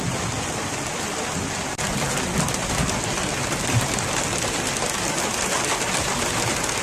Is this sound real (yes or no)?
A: yes